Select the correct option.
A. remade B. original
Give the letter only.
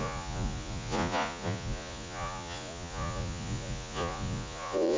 A